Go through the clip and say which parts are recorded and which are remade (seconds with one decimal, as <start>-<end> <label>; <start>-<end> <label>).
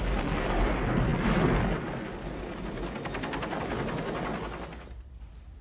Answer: 0.0-5.6 recorded